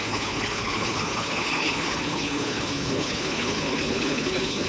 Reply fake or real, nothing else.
fake